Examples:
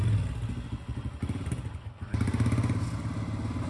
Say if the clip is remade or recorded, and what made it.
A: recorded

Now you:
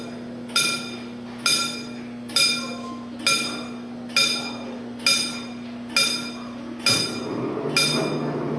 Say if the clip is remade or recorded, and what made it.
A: recorded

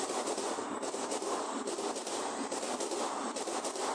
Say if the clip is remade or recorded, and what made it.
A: recorded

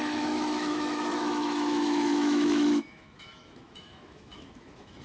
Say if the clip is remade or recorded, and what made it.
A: remade, autoencoder, DAC-VAE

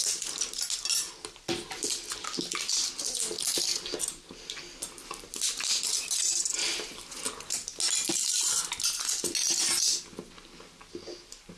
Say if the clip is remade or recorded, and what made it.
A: recorded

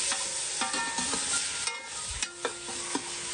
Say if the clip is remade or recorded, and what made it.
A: recorded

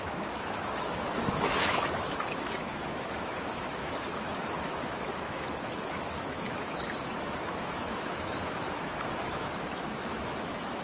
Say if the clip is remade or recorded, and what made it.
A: remade, autoencoder, DAC-VAE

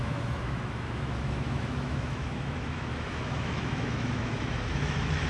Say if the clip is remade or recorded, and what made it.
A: remade, autoencoder, DAC-VAE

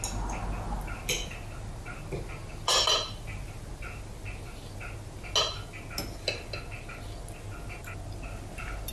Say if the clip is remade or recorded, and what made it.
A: recorded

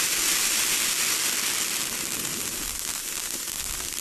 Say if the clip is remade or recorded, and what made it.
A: recorded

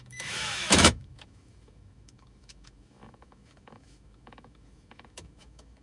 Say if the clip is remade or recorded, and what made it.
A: remade, autoencoder, DAC-VAE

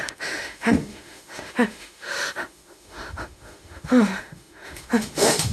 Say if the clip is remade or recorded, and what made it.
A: remade, autoencoder, DAC-VAE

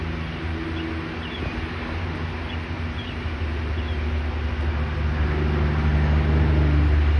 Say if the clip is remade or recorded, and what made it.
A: recorded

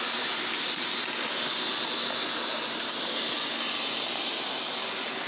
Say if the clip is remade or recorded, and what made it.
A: recorded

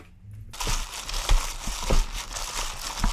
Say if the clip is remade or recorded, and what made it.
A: recorded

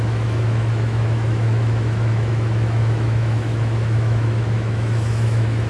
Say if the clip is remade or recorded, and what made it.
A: remade, autoencoder, DAC-VAE